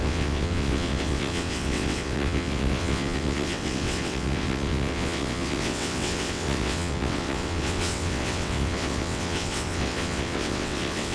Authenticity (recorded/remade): remade